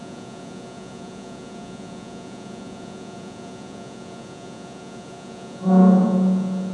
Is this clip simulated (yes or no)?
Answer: yes